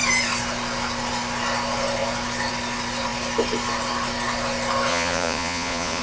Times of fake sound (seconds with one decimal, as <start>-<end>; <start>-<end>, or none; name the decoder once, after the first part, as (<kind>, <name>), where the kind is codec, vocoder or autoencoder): 4.9-6.0 (vocoder, Vocos)